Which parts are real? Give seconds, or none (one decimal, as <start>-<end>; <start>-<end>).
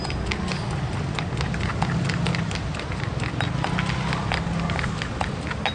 0.0-5.7